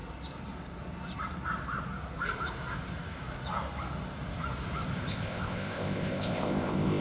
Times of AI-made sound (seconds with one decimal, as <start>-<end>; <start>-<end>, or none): 5.1-7.0